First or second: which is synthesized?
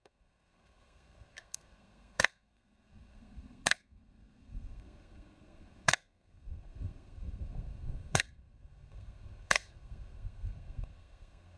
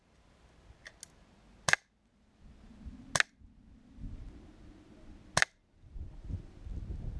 first